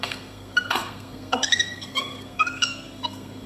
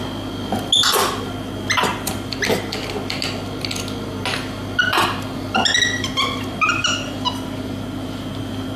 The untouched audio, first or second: second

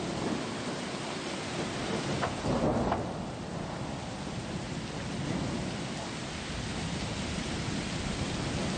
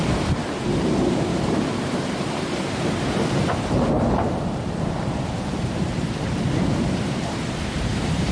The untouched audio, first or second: first